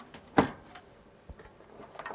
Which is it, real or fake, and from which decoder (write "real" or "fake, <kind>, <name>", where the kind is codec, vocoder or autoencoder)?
real